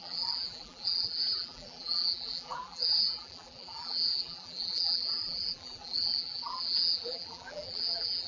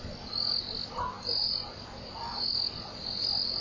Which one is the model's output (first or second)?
first